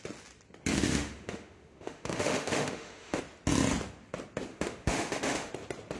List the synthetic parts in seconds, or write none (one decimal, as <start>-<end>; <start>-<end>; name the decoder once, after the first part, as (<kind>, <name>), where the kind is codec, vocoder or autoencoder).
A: 0.7-3.2 (autoencoder, DAC-VAE); 4.5-5.5